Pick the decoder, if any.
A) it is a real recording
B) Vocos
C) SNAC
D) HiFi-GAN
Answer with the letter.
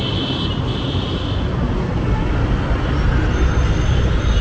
A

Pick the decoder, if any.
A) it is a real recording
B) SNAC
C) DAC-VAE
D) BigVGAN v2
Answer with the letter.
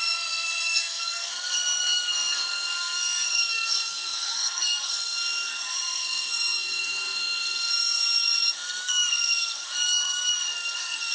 B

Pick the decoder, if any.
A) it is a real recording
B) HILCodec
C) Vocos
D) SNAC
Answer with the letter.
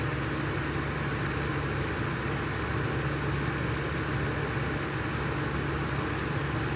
A